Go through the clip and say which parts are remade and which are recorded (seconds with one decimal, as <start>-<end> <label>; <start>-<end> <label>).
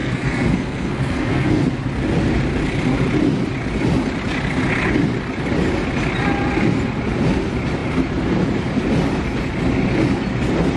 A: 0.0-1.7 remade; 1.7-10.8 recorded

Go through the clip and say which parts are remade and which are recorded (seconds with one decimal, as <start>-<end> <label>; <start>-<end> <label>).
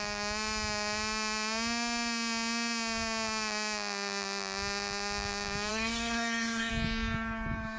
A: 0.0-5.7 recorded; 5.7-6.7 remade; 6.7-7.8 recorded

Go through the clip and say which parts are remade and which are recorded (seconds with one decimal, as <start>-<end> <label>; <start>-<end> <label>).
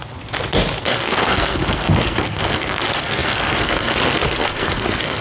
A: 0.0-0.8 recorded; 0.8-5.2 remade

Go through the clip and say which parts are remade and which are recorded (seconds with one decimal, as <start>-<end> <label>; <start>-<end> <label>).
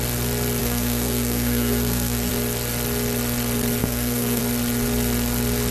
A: 0.0-0.6 recorded; 0.6-2.3 remade; 2.3-3.8 recorded; 3.8-4.4 remade; 4.4-5.7 recorded